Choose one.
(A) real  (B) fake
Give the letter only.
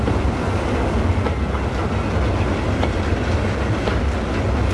A